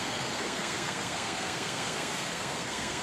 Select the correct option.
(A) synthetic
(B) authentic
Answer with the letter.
A